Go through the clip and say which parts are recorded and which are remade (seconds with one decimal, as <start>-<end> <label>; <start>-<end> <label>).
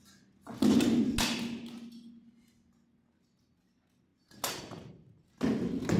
0.0-6.0 recorded